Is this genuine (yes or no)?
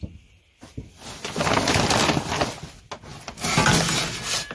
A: yes